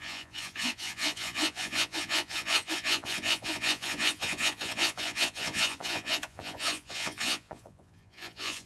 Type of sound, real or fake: fake